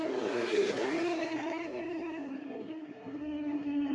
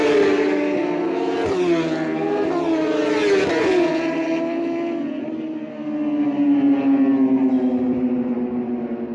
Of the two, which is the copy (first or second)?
first